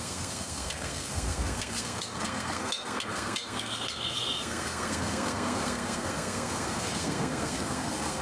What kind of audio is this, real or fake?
fake